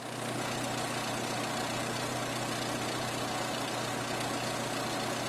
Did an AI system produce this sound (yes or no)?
no